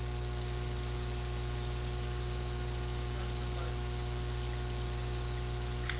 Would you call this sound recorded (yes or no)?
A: yes